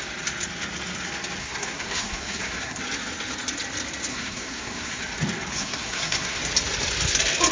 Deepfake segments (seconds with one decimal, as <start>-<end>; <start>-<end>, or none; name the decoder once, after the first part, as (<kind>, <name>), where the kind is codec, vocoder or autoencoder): 1.4-2.8 (codec, SNAC); 4.1-5.0; 5.5-6.4